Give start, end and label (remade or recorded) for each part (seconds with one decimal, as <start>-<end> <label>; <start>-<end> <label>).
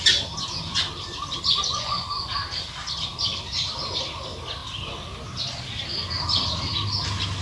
0.0-1.7 recorded; 1.7-2.3 remade; 2.3-7.4 recorded